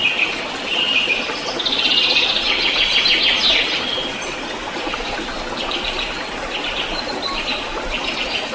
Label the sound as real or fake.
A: real